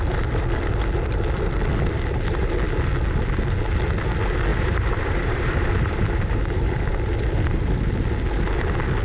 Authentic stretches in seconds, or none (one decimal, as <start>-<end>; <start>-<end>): 0.0-4.5; 6.8-9.0